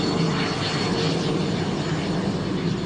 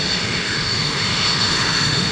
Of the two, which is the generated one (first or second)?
second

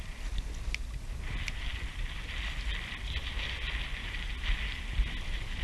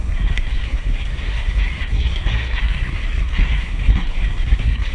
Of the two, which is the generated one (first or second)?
second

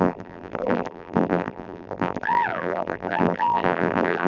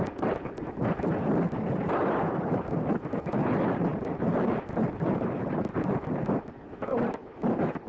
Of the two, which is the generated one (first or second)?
first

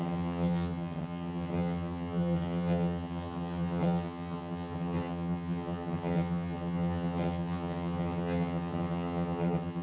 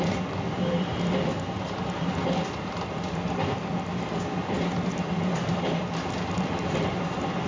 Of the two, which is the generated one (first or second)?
first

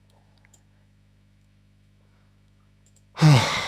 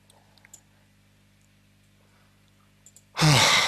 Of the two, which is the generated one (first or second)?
first